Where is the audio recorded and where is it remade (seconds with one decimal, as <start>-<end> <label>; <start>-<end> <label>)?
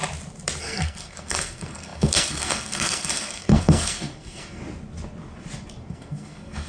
0.0-0.6 recorded; 0.6-4.6 remade; 4.6-5.9 recorded; 5.9-6.7 remade